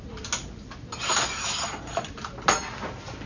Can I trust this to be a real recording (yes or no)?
yes